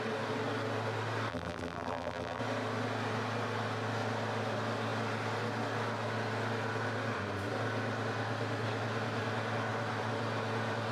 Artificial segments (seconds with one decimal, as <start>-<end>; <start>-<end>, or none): 1.3-2.4